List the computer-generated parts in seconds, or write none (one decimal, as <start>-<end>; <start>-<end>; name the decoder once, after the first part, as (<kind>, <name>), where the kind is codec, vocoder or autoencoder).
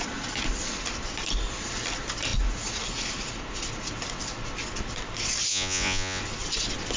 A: 5.5-6.2 (vocoder, Vocos)